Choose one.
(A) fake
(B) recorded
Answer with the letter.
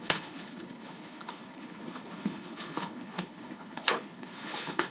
A